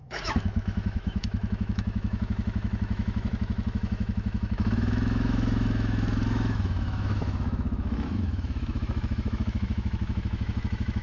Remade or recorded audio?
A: remade